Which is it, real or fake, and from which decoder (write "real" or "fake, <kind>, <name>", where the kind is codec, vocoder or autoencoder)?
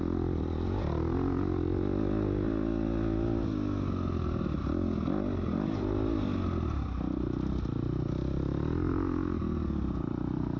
real